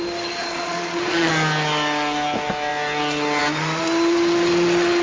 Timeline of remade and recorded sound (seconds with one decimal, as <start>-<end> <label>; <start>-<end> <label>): 0.0-0.4 recorded; 0.4-1.3 remade; 1.3-5.0 recorded

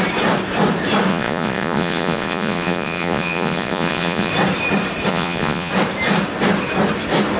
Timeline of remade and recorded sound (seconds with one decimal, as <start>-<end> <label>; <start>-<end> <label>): 0.0-1.1 recorded; 1.1-4.3 remade; 4.3-5.1 recorded; 5.1-5.7 remade; 5.7-7.4 recorded